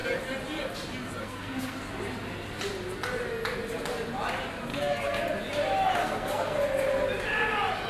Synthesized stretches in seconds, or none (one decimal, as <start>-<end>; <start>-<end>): 1.2-1.9; 4.7-5.2; 6.0-6.6